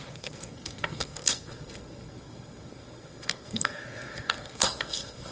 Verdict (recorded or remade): remade